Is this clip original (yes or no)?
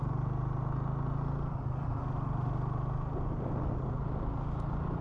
yes